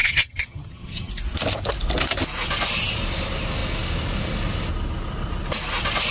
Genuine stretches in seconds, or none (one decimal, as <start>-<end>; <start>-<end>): 1.1-6.1